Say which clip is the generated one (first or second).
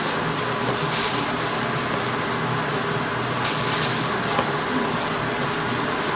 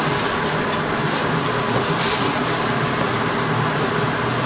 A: second